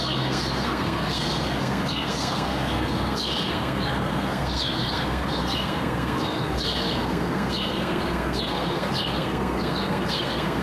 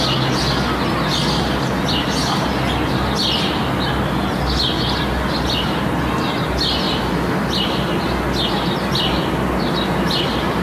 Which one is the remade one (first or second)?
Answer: first